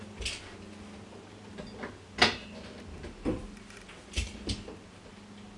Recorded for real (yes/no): yes